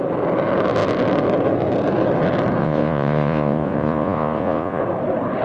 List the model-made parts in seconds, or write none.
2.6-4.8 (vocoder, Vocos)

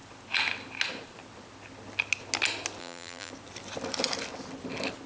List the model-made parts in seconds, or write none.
2.8-3.3 (vocoder, BigVGAN v2)